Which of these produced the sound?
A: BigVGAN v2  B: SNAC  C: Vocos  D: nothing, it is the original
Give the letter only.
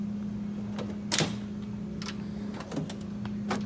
D